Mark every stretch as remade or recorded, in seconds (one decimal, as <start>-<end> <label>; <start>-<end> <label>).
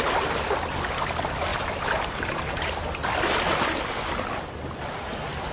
0.0-1.5 recorded; 1.5-2.7 remade; 2.7-5.5 recorded